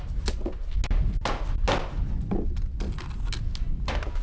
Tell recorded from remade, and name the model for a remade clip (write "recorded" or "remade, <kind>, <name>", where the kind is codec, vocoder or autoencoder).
recorded